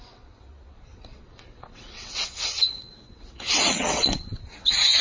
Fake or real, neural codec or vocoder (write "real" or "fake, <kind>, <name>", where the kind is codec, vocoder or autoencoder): fake, vocoder, WaveNeXt